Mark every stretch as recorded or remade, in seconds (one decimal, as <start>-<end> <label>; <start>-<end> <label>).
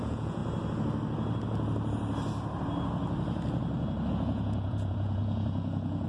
0.0-0.4 remade; 0.4-4.1 recorded; 4.1-6.1 remade